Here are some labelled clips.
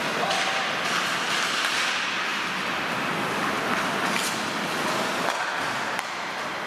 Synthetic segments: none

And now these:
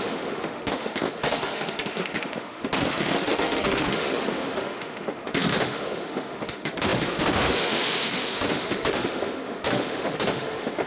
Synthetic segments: 0.0-10.9 (autoencoder, DAC-VAE)

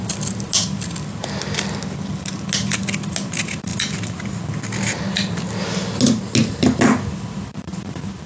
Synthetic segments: none

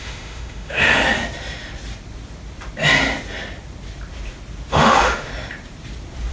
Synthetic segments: 0.0-0.9 (autoencoder, DAC-VAE); 4.7-5.3

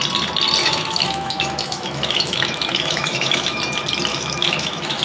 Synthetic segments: 0.6-3.6 (autoencoder, DAC-VAE); 4.1-5.0

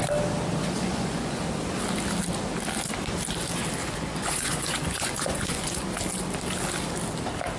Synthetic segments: 0.6-1.4 (vocoder, Vocos); 3.8-5.9

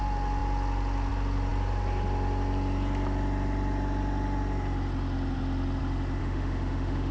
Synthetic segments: 6.2-7.1 (autoencoder, DAC-VAE)